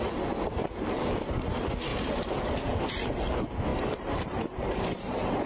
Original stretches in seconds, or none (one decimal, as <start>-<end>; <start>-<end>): 0.0-1.9; 2.5-3.7